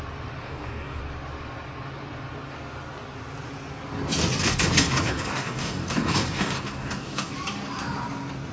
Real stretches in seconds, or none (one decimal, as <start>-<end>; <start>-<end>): 0.0-0.4; 1.0-4.4; 7.3-8.5